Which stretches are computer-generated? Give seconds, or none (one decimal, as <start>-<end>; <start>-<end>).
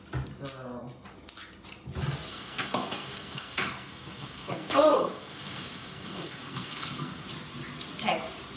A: 2.3-7.3